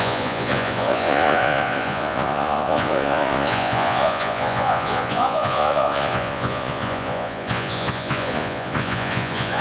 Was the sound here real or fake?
fake